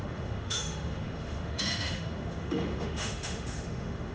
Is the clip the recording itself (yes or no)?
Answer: no